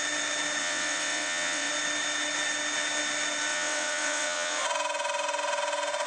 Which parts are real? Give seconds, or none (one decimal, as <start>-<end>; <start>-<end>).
0.0-0.6; 1.7-3.5; 4.6-6.1